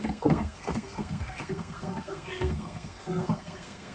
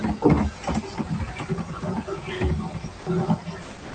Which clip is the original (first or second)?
second